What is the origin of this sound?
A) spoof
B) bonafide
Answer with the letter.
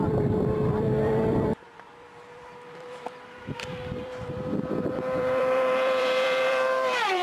A